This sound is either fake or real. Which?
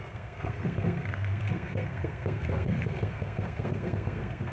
fake